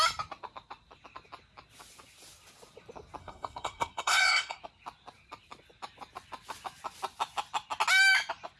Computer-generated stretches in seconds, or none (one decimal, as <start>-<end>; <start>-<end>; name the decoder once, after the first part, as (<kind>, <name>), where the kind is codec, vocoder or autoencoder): 3.2-4.6 (codec, SNAC)